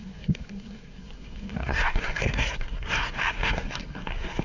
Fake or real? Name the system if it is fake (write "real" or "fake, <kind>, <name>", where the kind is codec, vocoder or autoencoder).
fake, codec, SNAC